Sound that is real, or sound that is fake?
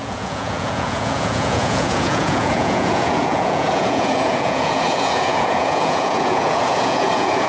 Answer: fake